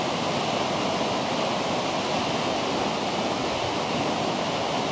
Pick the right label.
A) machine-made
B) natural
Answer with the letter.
B